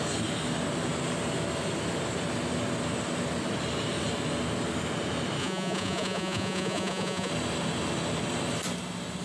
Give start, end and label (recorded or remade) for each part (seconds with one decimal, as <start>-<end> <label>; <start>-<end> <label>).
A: 0.0-5.4 recorded; 5.4-7.3 remade; 7.3-9.2 recorded